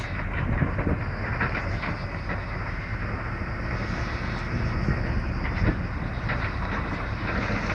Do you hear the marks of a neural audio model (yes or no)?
no